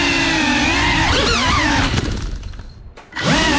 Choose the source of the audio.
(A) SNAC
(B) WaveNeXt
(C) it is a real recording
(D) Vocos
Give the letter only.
C